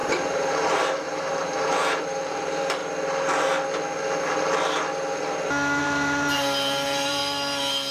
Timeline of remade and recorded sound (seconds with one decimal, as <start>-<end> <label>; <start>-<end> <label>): 0.0-2.8 remade; 2.8-5.8 recorded; 5.8-7.2 remade; 7.2-7.9 recorded